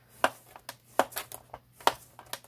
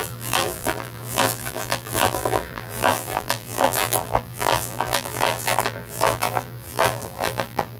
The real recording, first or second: first